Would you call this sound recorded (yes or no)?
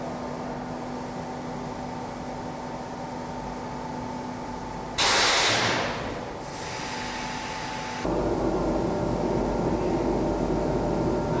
yes